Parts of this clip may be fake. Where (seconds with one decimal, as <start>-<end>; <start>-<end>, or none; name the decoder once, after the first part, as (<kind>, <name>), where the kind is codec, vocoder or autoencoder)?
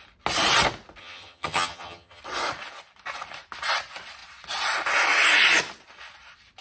1.0-2.2 (vocoder, HiFi-GAN)